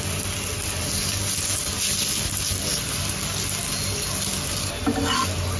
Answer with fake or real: real